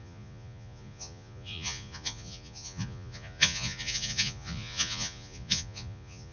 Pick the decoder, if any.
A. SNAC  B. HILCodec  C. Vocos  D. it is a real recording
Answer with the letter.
C